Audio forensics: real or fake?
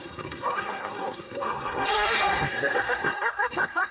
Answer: fake